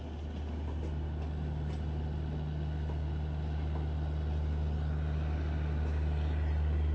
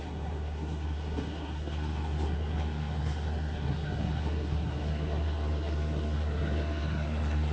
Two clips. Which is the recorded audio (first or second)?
first